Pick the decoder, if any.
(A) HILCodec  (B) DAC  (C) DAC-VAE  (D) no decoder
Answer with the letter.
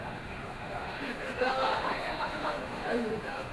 C